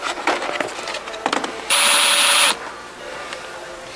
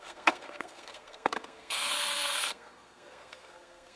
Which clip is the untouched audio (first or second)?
first